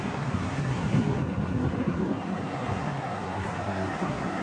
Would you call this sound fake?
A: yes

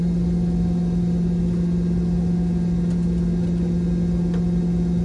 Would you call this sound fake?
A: no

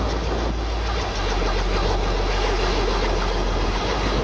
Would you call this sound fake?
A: no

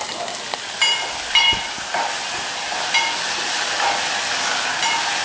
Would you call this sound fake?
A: no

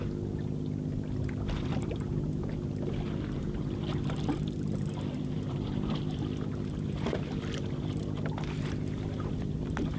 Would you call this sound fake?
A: no